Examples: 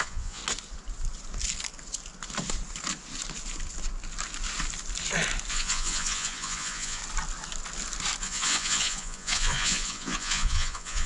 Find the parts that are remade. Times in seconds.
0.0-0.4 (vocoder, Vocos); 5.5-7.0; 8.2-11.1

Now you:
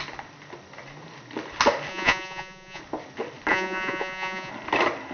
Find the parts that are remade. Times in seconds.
1.9-2.8 (vocoder, Vocos); 3.5-4.5